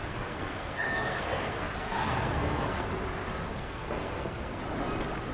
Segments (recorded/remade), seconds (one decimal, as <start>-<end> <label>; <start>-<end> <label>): 0.0-2.9 remade; 2.9-3.5 recorded; 3.5-4.6 remade; 4.6-5.3 recorded

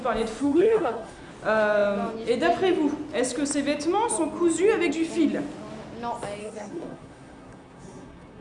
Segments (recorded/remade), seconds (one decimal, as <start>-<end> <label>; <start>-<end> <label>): 0.0-0.4 recorded; 0.4-1.3 remade; 1.3-6.4 recorded; 6.4-8.4 remade

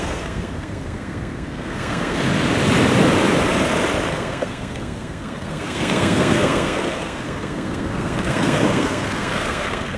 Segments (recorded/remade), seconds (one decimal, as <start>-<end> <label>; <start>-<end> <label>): 0.0-2.3 remade; 2.3-4.1 recorded; 4.1-10.0 remade

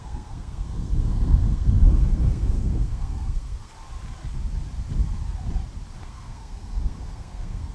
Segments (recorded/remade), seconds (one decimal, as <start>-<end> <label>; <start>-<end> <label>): 0.0-3.7 remade; 3.7-6.0 recorded; 6.0-7.7 remade